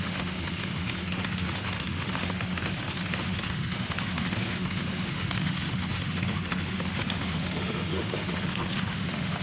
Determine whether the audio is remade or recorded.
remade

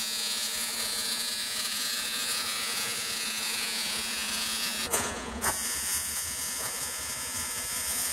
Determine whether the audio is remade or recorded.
remade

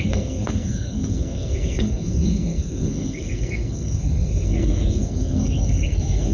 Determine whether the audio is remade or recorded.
remade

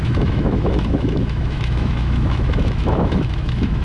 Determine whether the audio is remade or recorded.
remade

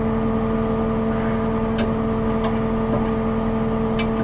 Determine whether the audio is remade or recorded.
recorded